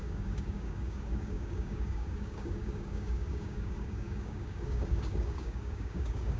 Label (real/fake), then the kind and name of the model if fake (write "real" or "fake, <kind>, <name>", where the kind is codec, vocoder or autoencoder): fake, codec, DAC